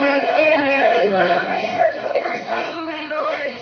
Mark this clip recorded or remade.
remade